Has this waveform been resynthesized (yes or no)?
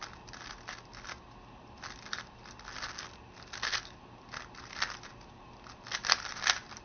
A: no